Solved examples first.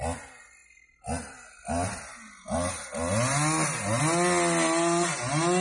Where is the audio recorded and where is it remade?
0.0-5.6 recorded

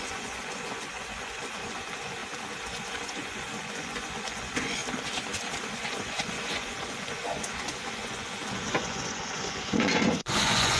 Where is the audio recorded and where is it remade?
0.0-2.2 remade; 2.2-2.7 recorded; 2.7-4.8 remade; 4.8-5.7 recorded; 5.7-10.8 remade

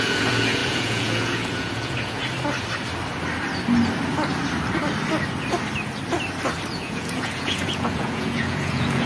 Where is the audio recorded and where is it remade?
0.0-2.2 remade; 2.2-6.7 recorded; 6.7-9.1 remade

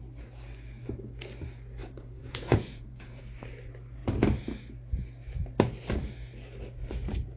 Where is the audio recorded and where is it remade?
0.0-1.8 recorded; 1.8-3.2 remade; 3.2-7.4 recorded

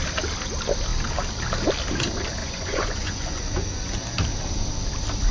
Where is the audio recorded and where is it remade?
0.0-2.4 recorded; 2.4-3.7 remade; 3.7-5.3 recorded

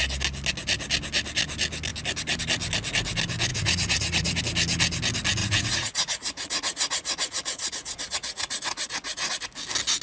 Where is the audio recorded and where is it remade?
0.0-3.5 recorded; 3.5-4.4 remade; 4.4-5.4 recorded; 5.4-9.3 remade; 9.3-10.0 recorded

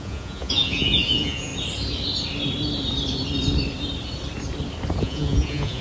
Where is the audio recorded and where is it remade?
0.0-1.5 remade; 1.5-5.0 recorded; 5.0-5.8 remade